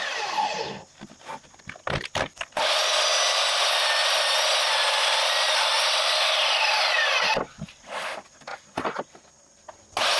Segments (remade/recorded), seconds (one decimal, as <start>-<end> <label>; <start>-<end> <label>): 0.0-10.2 recorded